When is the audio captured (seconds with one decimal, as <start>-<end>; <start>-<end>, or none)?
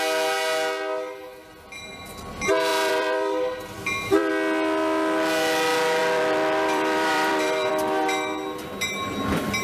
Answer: 0.0-2.7; 4.3-6.0; 7.7-9.6